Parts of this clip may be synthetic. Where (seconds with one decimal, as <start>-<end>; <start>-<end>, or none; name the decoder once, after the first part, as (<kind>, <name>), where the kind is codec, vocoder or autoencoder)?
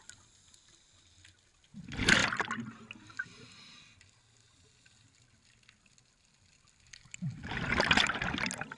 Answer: none